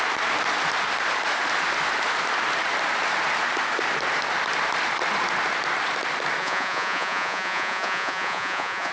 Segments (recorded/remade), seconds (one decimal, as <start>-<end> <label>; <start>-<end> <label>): 0.0-6.4 recorded; 6.4-8.9 remade